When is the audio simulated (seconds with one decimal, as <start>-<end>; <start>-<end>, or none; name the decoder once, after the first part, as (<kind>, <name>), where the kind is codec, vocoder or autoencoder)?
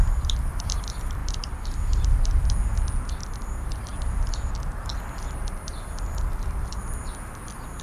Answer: 0.0-1.2 (vocoder, BigVGAN v2); 3.1-3.9; 4.9-7.8